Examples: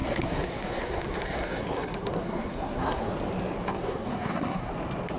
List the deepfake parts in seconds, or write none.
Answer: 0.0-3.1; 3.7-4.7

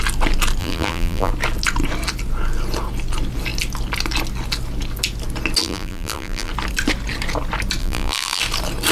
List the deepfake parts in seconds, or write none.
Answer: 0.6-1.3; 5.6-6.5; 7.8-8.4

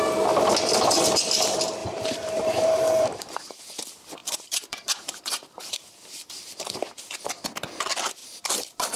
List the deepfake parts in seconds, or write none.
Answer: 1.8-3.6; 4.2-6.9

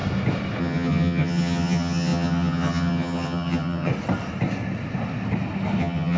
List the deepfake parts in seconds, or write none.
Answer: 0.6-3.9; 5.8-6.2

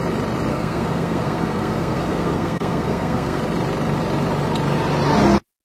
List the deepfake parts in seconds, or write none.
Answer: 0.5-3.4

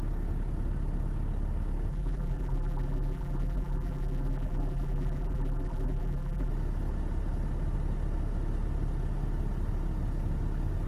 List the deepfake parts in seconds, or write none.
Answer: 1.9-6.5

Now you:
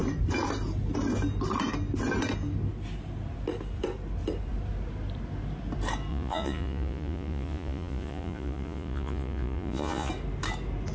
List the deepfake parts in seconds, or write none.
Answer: 6.1-10.1